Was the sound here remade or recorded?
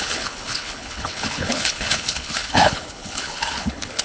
remade